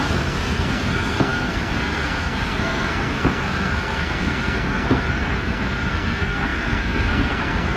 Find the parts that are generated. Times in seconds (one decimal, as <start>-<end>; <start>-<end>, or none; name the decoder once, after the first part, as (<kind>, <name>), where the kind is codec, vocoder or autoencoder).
0.0-7.8 (codec, SNAC)